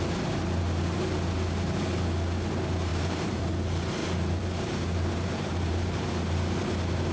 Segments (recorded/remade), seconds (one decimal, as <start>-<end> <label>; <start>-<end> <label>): 0.0-2.9 recorded; 2.9-3.5 remade; 3.5-4.0 recorded; 4.0-6.6 remade; 6.6-7.1 recorded